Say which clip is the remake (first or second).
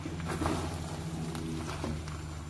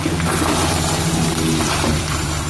second